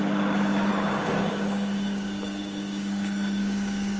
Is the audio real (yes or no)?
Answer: no